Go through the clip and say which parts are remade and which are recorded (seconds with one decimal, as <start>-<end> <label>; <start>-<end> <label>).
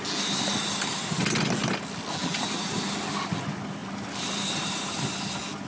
0.0-5.7 recorded